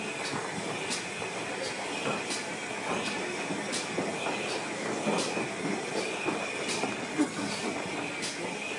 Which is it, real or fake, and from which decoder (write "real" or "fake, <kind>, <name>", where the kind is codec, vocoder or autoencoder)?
real